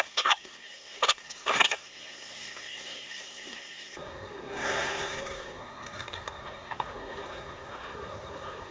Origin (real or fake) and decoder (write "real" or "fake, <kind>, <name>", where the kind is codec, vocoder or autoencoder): fake, codec, SNAC